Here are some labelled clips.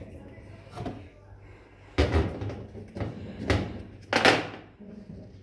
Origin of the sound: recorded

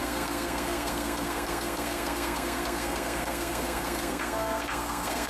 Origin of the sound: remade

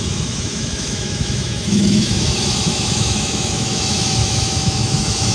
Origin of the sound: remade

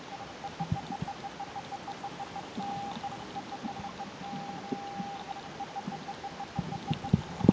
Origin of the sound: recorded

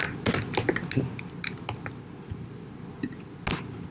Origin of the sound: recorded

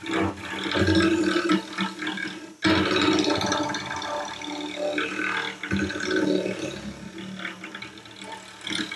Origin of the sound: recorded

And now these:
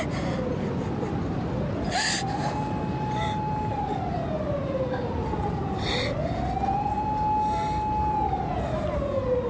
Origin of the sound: recorded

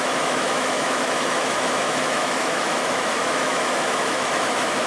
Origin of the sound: remade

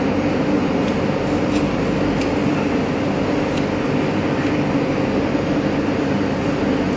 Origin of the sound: recorded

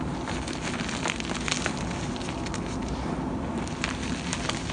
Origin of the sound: recorded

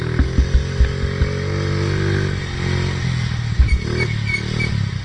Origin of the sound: recorded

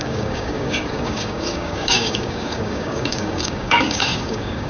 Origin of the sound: remade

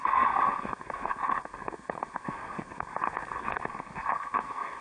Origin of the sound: remade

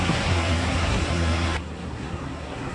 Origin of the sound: remade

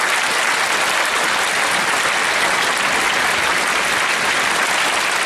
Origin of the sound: recorded